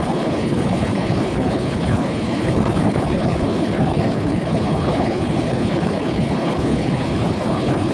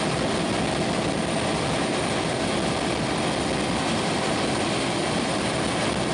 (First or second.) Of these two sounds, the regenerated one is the first